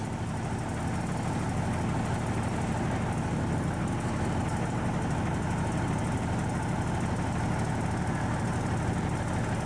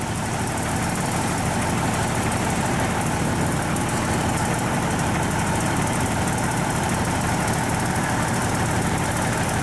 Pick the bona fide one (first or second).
first